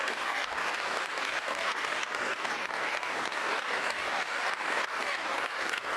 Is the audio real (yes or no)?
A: no